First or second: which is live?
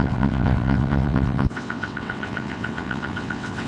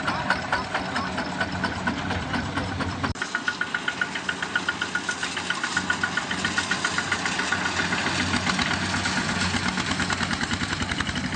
second